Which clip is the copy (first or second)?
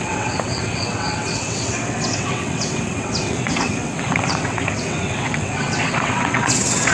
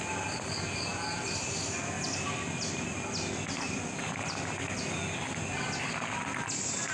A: first